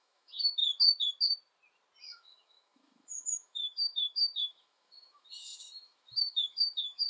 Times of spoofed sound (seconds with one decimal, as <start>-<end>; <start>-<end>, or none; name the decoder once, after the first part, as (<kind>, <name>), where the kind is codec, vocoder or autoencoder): 0.0-0.6 (autoencoder, DAC-VAE); 2.0-7.1